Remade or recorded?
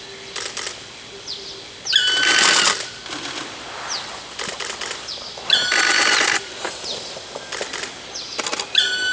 recorded